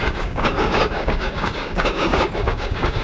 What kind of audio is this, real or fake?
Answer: fake